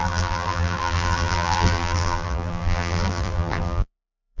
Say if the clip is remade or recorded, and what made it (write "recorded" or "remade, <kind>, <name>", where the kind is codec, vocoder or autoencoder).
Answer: remade, vocoder, BigVGAN v2